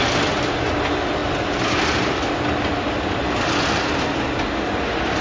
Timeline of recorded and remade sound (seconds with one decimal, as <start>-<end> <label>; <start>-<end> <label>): 0.0-5.2 recorded